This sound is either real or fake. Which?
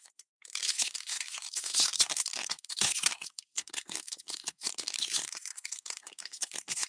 fake